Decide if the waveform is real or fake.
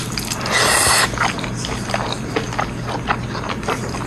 real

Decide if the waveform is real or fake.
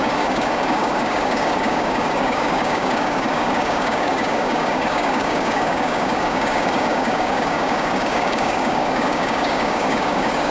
fake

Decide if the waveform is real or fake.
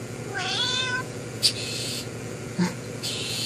fake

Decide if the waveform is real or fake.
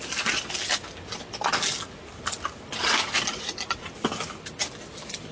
real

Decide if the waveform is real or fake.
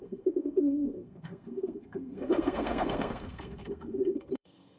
fake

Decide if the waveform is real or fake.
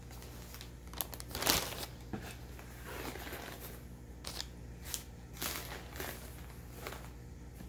real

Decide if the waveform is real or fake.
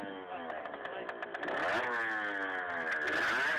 real